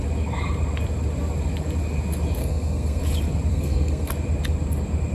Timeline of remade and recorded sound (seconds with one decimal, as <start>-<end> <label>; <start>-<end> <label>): 0.0-2.4 recorded; 2.4-3.0 remade; 3.0-3.5 recorded; 3.5-4.1 remade; 4.1-5.1 recorded